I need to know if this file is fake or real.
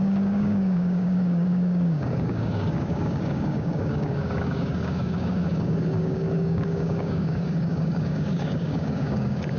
fake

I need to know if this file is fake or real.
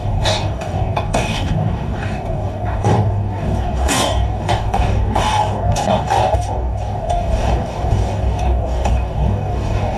fake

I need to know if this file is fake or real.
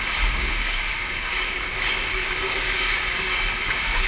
fake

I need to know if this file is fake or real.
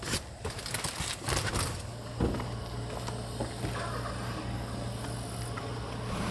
real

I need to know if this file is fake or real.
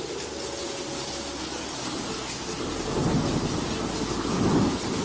real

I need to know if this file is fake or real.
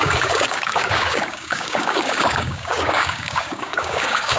fake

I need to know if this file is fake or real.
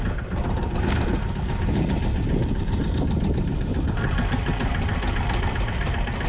real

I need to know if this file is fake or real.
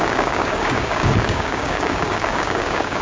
fake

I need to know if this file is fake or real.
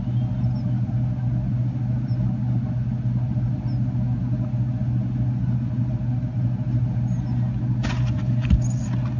real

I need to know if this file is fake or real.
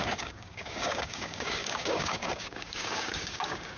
fake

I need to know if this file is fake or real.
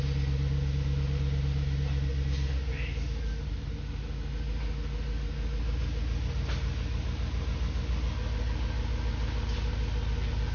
real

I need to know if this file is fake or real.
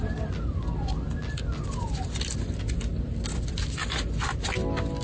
real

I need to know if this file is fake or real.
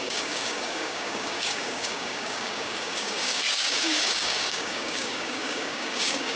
fake